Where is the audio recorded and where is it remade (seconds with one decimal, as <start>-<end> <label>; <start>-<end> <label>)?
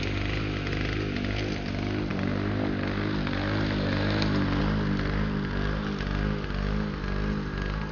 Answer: 0.0-7.9 recorded